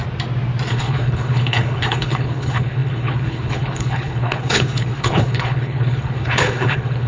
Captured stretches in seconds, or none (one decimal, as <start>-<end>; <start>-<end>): 0.0-0.7